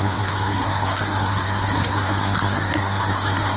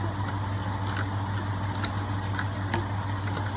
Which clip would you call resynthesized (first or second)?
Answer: first